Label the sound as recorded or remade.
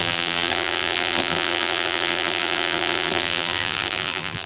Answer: remade